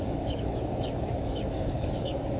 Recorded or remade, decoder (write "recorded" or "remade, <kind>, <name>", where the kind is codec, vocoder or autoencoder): remade, codec, DAC